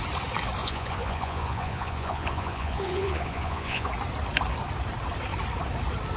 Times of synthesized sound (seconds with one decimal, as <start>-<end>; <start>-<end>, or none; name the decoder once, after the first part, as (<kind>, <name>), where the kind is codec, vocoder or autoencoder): 0.6-3.9 (vocoder, Vocos)